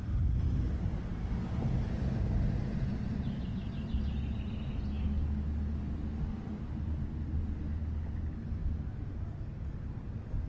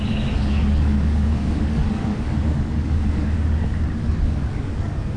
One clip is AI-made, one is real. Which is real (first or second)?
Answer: first